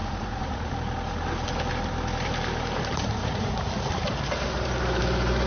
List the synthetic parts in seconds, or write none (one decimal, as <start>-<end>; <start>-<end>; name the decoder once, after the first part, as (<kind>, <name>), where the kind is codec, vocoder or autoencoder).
0.0-0.7 (vocoder, Vocos); 3.2-3.7